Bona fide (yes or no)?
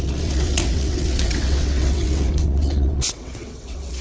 no